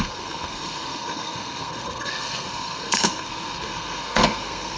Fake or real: fake